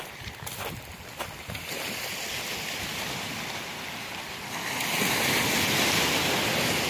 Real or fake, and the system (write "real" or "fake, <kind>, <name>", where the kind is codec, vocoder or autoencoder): real